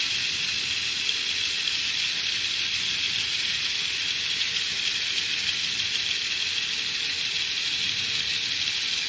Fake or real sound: real